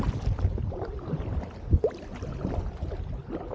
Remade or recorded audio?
recorded